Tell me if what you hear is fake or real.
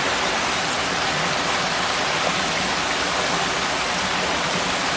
real